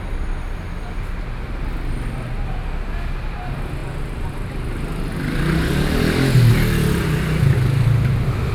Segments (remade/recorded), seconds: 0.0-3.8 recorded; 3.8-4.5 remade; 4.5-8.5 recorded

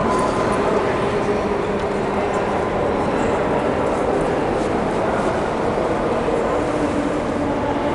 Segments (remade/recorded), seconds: 0.0-0.5 remade; 0.5-7.9 recorded